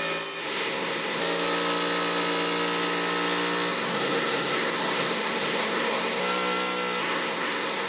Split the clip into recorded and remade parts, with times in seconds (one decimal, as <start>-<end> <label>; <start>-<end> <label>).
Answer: 0.0-0.4 recorded; 0.4-1.2 remade; 1.2-3.7 recorded; 3.7-6.2 remade; 6.2-7.0 recorded; 7.0-7.9 remade